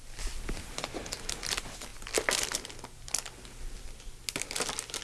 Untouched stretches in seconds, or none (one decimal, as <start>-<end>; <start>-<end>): 0.0-5.0